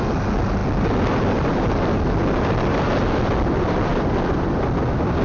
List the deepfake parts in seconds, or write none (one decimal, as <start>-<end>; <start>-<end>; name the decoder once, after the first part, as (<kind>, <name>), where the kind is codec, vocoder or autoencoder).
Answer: none

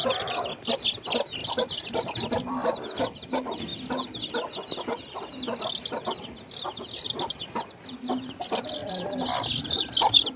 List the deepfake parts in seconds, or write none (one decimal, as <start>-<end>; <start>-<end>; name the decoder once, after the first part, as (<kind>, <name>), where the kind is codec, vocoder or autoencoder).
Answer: 1.4-3.3 (vocoder, BigVGAN v2); 8.8-10.4

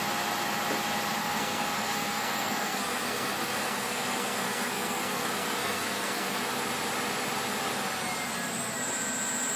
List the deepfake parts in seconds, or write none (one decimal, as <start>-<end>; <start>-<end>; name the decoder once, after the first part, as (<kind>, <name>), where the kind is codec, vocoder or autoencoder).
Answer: 1.2-6.4 (codec, SNAC)

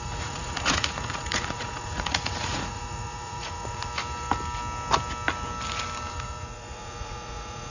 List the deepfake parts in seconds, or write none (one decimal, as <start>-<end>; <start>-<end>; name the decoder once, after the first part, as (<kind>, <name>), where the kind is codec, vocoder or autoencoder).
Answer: 0.0-3.9 (vocoder, Vocos); 6.1-7.7

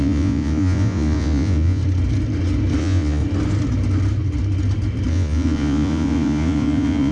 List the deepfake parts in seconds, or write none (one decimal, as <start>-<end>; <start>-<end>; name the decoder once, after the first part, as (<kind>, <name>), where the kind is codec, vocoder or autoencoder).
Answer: 0.0-1.8 (vocoder, Vocos); 2.8-3.2; 5.1-7.1

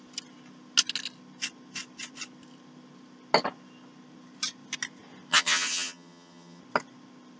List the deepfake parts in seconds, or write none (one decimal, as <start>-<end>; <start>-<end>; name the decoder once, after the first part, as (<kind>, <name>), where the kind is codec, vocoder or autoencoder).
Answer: 5.3-6.6 (vocoder, HiFi-GAN)

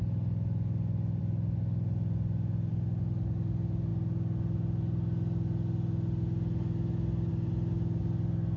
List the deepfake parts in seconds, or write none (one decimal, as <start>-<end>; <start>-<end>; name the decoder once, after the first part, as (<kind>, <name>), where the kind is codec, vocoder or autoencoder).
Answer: none